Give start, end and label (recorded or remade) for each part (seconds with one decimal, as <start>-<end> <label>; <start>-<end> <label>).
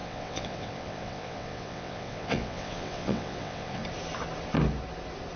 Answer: 0.0-3.8 remade; 3.8-5.4 recorded